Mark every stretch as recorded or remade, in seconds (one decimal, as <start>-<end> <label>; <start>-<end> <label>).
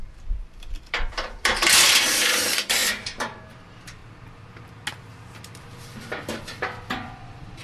0.0-4.0 remade; 4.0-5.4 recorded; 5.4-7.6 remade